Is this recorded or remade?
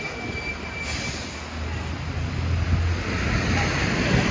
recorded